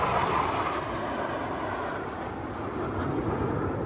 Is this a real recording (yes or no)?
yes